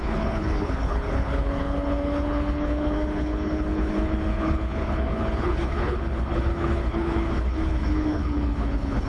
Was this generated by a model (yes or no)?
yes